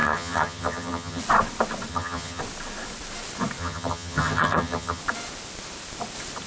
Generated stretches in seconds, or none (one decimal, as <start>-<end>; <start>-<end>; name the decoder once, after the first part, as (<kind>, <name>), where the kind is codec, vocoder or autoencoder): 0.0-1.2 (vocoder, HiFi-GAN); 1.9-2.4; 3.6-5.0